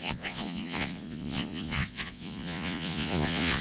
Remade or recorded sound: remade